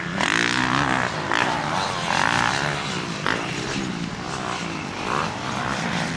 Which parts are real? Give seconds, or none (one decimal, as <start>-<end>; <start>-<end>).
0.4-4.1